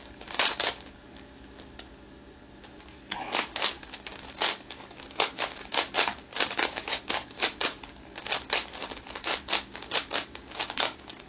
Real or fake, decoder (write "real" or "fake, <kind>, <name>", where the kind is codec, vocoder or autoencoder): fake, codec, DAC